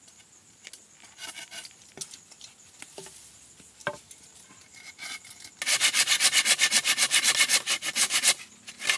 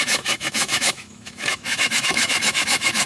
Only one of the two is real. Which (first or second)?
first